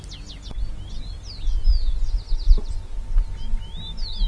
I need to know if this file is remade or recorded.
recorded